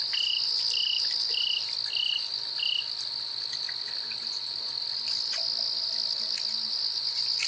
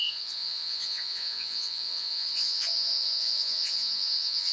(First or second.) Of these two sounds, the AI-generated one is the second